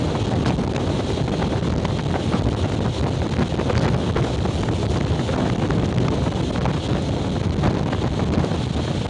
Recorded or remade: recorded